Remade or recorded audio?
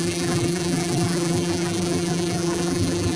remade